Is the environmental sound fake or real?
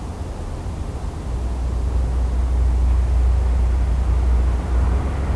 real